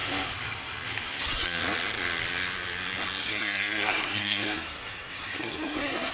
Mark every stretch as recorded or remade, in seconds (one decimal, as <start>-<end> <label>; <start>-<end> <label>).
0.0-1.2 recorded; 1.2-1.6 remade; 1.6-3.2 recorded; 3.2-6.1 remade